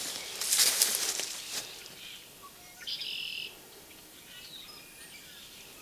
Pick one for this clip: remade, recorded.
remade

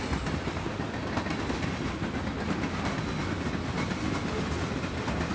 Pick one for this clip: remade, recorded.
recorded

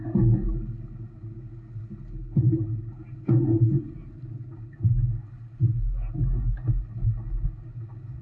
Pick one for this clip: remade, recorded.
recorded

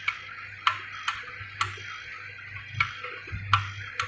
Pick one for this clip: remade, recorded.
recorded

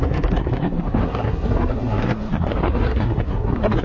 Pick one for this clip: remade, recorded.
remade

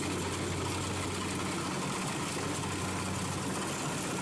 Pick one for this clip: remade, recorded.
recorded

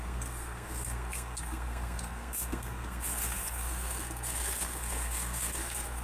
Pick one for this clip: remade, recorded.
remade